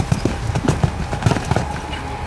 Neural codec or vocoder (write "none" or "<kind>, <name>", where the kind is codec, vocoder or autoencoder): none